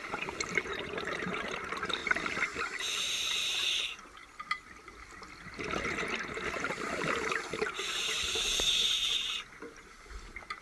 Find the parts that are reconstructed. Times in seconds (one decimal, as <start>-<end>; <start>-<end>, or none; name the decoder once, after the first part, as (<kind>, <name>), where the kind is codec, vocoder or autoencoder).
0.0-2.0 (vocoder, BigVGAN v2); 2.8-4.2; 6.5-10.6